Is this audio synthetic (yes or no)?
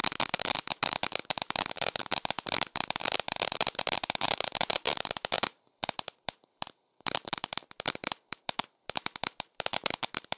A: yes